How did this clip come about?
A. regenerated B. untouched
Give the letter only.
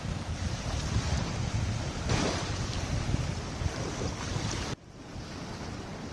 B